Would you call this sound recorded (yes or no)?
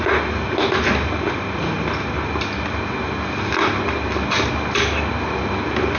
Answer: no